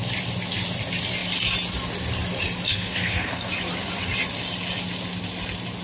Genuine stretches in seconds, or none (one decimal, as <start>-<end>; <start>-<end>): 0.0-2.7; 3.5-5.8